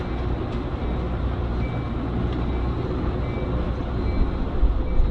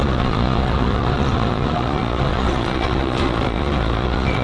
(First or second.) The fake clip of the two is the second